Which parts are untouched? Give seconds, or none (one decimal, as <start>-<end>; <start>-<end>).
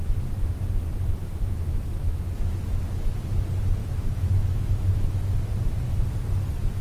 0.0-1.2; 3.4-3.8; 5.2-6.8